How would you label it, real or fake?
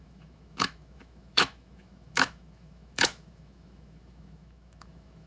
fake